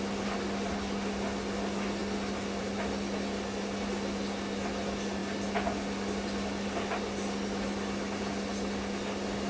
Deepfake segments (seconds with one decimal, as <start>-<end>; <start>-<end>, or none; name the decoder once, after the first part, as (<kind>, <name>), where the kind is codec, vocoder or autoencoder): none